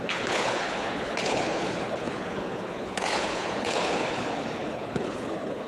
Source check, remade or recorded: remade